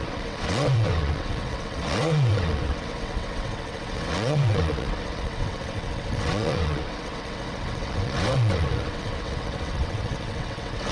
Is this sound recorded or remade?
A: remade